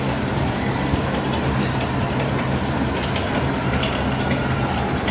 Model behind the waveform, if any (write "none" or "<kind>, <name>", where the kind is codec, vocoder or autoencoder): none